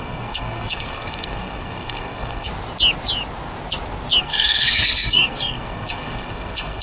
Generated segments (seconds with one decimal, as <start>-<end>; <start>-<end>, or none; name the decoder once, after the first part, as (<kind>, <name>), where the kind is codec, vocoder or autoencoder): 0.0-2.5 (codec, SNAC); 4.2-6.8